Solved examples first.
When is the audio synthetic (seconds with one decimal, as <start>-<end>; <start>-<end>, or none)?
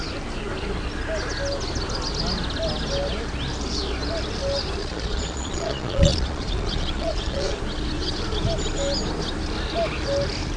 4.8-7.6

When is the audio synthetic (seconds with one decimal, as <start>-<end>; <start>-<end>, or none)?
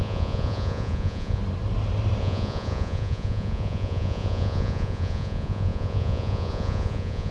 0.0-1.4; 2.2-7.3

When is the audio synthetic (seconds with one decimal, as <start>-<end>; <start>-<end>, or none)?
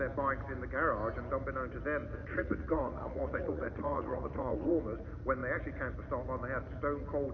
2.2-4.7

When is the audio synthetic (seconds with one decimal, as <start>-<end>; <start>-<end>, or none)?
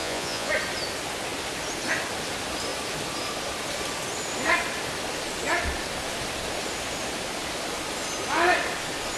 0.0-0.5